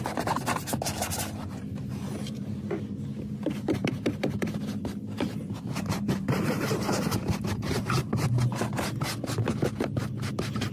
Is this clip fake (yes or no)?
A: yes